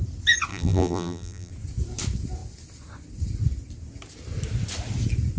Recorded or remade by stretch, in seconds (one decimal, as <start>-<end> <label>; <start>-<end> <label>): 0.0-0.5 recorded; 0.5-1.5 remade; 1.5-5.4 recorded